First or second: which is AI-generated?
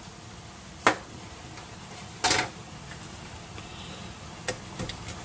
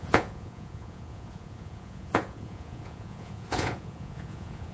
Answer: second